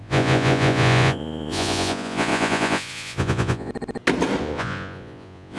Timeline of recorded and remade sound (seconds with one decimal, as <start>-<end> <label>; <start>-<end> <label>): 0.0-3.7 remade; 3.7-4.4 recorded; 4.4-5.6 remade